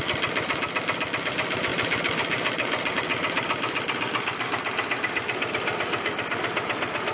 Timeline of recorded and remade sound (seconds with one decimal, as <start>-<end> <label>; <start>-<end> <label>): 0.0-7.1 recorded